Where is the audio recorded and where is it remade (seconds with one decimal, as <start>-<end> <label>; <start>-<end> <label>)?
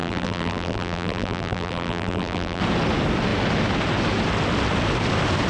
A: 0.0-2.6 remade; 2.6-5.5 recorded